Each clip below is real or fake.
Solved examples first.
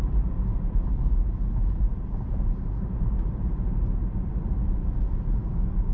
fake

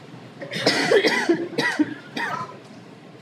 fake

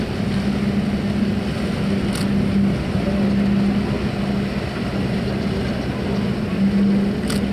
real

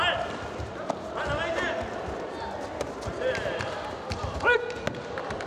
real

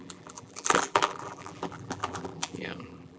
fake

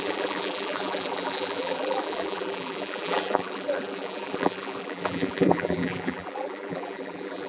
fake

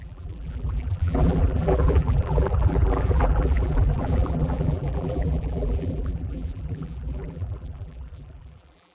fake